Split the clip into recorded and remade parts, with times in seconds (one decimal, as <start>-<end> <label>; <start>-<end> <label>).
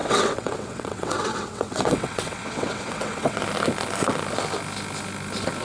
0.0-3.4 remade; 3.4-5.6 recorded